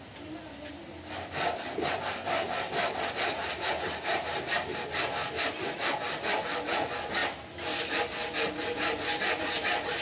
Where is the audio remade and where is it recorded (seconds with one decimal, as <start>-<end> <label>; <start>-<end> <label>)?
0.0-10.0 recorded